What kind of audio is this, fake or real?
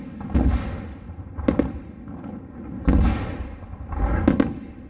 real